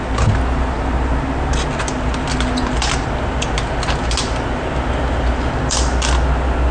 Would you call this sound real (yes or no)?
yes